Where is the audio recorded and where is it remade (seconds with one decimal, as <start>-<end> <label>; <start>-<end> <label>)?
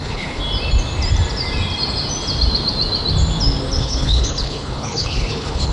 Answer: 0.0-0.4 remade; 0.4-3.8 recorded; 3.8-5.7 remade